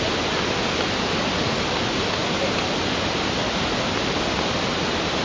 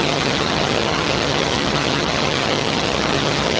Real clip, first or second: first